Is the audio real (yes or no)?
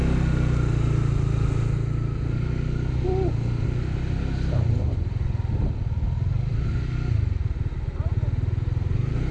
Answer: yes